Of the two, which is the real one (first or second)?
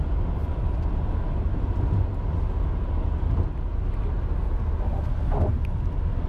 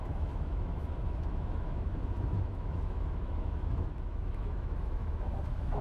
first